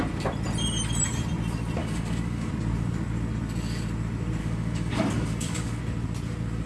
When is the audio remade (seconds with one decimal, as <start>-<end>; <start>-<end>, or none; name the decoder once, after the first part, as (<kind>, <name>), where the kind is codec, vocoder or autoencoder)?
1.8-2.5 (codec, DAC); 4.4-5.8

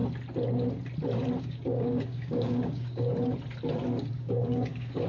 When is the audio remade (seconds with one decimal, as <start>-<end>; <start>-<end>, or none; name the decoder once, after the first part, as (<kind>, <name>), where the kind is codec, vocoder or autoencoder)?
1.4-3.1 (codec, DAC); 4.1-5.1

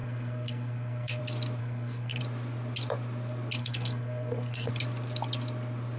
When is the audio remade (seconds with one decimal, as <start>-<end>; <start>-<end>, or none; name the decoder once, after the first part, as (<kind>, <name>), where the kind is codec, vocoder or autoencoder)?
0.0-1.2 (codec, SNAC); 1.6-2.2; 3.6-4.7

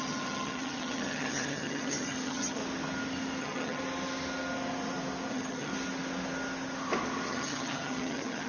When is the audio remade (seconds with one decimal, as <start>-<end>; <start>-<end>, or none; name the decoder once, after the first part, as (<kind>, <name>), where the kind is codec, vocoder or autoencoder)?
0.0-2.6 (vocoder, HiFi-GAN); 3.4-3.8; 5.3-5.7; 7.3-8.5

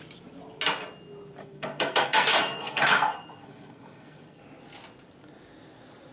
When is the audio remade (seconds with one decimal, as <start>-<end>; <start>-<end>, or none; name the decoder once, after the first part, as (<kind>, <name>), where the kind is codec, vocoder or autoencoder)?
1.4-4.4 (codec, SNAC)

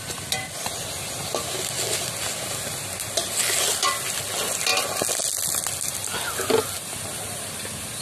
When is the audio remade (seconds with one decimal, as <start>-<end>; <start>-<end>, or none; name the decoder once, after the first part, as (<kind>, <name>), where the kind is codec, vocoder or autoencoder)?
none

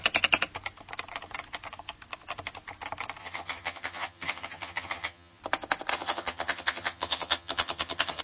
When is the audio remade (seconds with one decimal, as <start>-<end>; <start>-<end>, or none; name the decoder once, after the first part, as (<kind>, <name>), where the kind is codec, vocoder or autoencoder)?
3.2-5.4 (vocoder, HiFi-GAN); 5.9-8.2

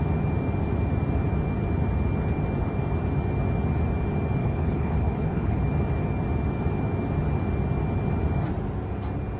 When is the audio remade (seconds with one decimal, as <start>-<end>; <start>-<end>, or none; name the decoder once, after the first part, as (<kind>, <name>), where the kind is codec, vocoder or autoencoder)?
4.4-5.6 (codec, HILCodec)